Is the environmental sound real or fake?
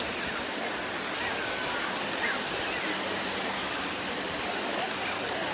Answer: real